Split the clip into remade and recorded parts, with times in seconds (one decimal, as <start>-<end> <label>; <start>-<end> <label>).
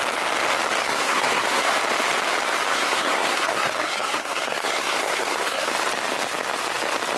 0.0-0.8 recorded; 0.8-1.7 remade; 1.7-2.7 recorded; 2.7-5.7 remade; 5.7-7.2 recorded